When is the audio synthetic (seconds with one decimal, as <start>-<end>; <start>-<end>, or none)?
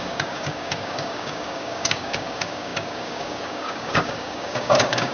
0.0-5.1